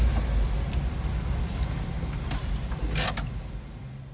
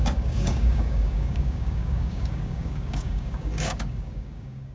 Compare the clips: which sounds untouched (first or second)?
first